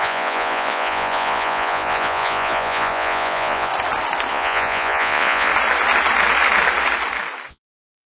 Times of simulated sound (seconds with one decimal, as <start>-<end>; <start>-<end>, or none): 0.0-3.7; 4.3-5.5; 7.5-8.1